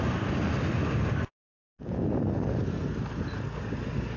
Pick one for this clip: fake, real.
real